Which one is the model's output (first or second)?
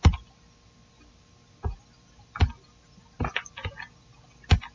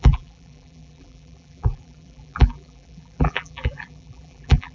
second